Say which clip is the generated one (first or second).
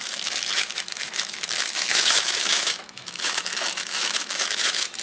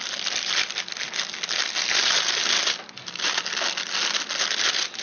first